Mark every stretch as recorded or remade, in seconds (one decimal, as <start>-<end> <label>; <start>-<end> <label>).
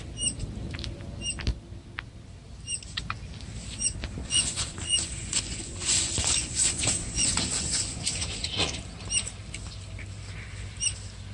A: 0.0-4.2 recorded; 4.2-8.8 remade; 8.8-11.3 recorded